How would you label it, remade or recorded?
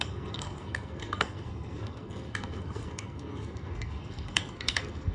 remade